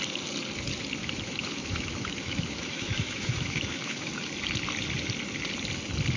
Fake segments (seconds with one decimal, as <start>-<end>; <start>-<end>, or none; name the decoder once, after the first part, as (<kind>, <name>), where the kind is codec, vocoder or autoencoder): 1.0-4.1 (autoencoder, DAC-VAE)